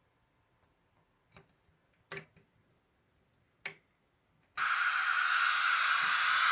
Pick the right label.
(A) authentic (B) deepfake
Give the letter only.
A